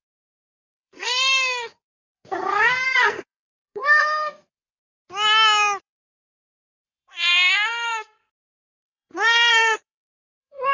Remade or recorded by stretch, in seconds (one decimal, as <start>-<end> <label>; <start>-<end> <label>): 0.0-4.6 remade; 4.6-5.8 recorded; 5.8-10.7 remade